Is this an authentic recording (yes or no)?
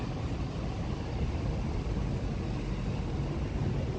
yes